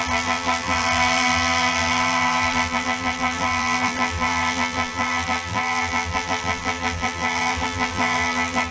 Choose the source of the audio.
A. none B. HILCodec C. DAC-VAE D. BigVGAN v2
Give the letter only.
D